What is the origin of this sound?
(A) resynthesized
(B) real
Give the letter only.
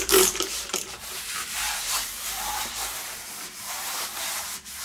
A